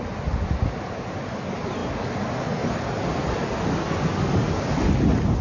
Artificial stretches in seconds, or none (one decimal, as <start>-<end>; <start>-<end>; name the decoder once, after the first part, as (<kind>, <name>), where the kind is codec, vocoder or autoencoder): none